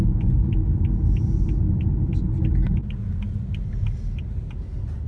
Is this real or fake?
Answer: real